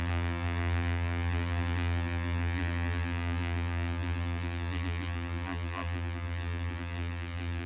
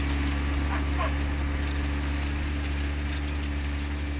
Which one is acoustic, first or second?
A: second